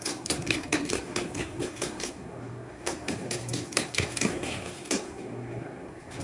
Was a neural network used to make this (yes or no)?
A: yes